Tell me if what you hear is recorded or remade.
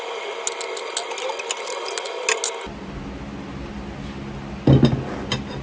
recorded